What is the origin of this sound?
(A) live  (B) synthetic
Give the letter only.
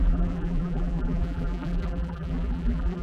B